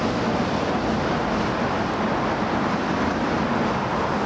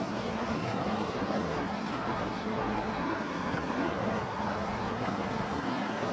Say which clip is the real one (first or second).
first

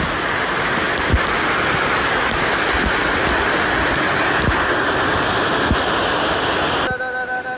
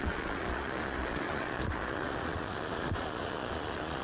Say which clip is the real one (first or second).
first